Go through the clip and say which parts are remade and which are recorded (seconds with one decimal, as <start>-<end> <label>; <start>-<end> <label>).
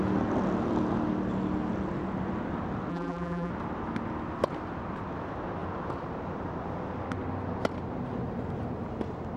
0.0-2.9 recorded; 2.9-3.5 remade; 3.5-9.4 recorded